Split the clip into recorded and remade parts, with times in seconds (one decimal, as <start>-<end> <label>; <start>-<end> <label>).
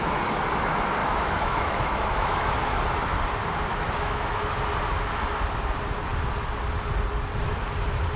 0.0-1.0 recorded; 1.0-2.5 remade; 2.5-3.7 recorded; 3.7-4.6 remade; 4.6-8.2 recorded